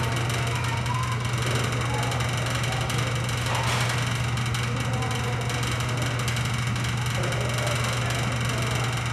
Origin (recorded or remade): recorded